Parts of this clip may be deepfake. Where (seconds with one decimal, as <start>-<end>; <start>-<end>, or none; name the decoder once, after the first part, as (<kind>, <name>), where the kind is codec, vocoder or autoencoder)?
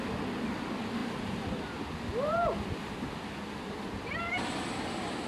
none